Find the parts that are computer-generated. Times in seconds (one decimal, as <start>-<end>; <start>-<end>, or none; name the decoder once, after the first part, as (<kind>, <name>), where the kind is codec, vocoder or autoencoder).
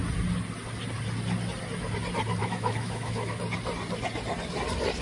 2.4-3.4 (autoencoder, DAC-VAE)